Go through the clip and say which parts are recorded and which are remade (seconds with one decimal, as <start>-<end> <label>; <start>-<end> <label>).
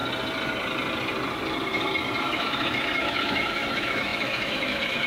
0.0-2.2 recorded; 2.2-5.1 remade